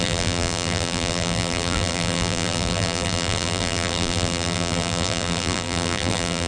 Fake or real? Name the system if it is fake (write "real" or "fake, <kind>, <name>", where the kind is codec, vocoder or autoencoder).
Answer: fake, vocoder, BigVGAN v2